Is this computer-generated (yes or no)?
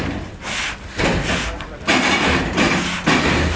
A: no